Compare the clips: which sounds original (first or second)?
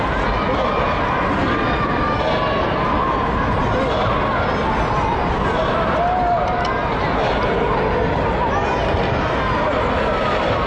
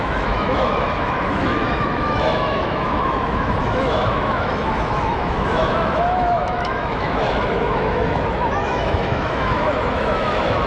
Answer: first